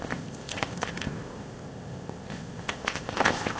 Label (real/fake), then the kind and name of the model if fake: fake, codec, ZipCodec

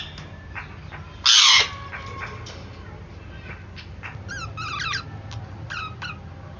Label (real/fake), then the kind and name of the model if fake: real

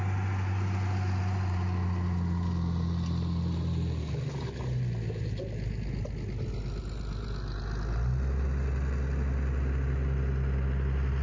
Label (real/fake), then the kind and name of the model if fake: real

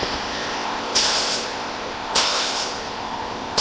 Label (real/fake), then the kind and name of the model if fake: fake, codec, ZipCodec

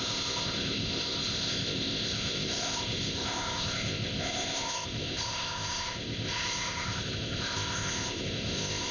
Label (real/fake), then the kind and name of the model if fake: fake, codec, ZipCodec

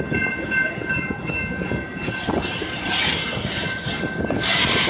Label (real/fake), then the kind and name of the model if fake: real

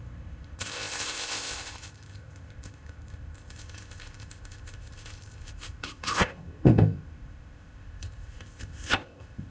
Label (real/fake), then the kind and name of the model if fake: fake, codec, ZipCodec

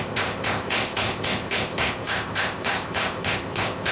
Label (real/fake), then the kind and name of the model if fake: fake, codec, ZipCodec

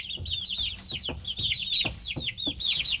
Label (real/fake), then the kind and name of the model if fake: real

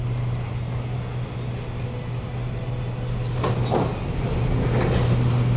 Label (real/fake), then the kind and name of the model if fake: real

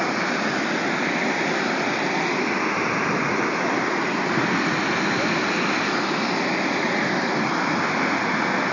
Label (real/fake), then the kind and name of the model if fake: real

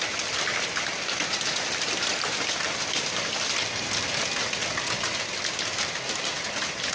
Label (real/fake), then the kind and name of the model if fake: real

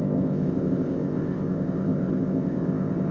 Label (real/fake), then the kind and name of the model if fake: fake, codec, ZipCodec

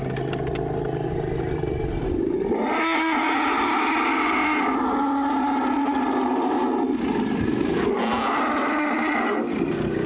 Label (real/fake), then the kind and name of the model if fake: real